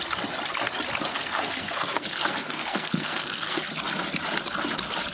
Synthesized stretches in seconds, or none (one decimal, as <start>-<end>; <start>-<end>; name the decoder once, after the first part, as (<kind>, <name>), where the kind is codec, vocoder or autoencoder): 1.1-3.7 (codec, SNAC)